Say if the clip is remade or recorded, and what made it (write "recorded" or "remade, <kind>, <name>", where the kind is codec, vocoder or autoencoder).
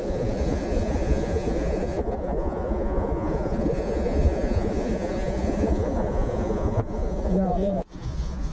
remade, vocoder, Vocos